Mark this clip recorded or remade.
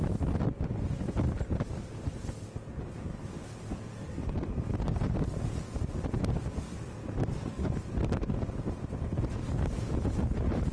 recorded